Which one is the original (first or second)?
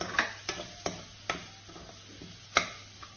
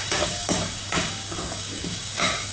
first